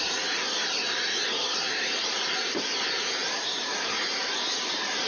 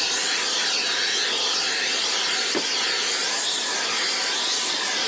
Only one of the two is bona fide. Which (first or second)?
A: second